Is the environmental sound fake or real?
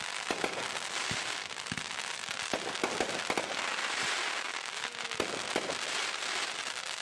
real